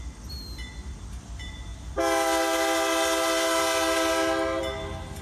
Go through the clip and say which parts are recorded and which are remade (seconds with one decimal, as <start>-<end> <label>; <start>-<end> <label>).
0.0-5.2 recorded